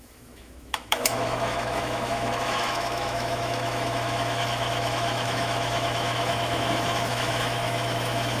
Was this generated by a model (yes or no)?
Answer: yes